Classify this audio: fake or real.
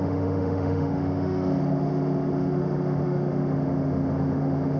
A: fake